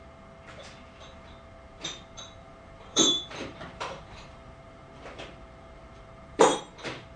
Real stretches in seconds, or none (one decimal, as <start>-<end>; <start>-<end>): 0.0-2.4; 6.6-7.2